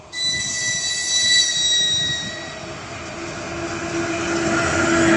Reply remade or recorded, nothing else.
recorded